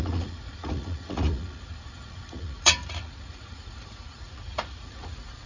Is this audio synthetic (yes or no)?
yes